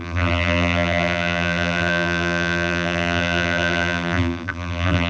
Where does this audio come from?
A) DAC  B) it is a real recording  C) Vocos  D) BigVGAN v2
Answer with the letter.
D